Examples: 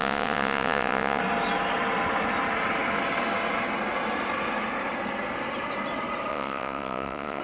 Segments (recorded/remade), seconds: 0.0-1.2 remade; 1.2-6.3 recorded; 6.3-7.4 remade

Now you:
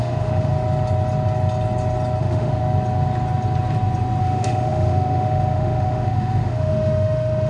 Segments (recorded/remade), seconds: 0.0-0.5 remade; 0.5-2.2 recorded; 2.2-2.6 remade; 2.6-4.2 recorded; 4.2-7.5 remade

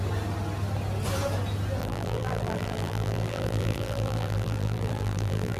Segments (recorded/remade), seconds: 0.0-1.8 recorded; 1.8-5.6 remade

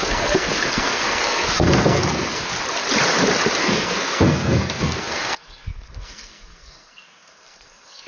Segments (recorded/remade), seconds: 0.0-2.5 remade; 2.5-3.6 recorded; 3.6-8.1 remade

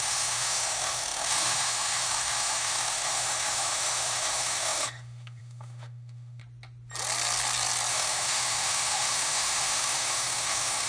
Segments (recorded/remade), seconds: 0.0-6.4 remade; 6.4-7.9 recorded; 7.9-10.9 remade

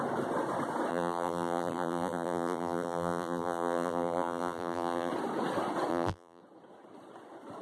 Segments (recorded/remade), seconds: 0.0-0.9 recorded; 0.9-5.1 remade; 5.1-5.9 recorded; 5.9-6.4 remade; 6.4-7.6 recorded

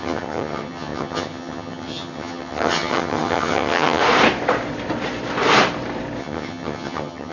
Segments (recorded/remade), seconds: 0.0-4.0 remade; 4.0-6.2 recorded; 6.2-7.3 remade